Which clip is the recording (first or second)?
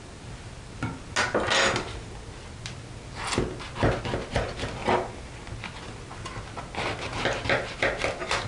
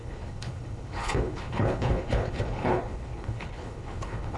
first